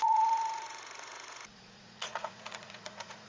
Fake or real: fake